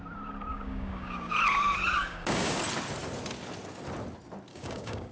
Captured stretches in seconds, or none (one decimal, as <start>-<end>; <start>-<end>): 0.0-0.5; 1.3-2.0; 2.6-4.5